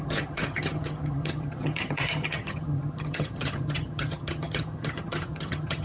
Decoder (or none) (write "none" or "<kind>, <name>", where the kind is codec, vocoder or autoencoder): vocoder, HiFi-GAN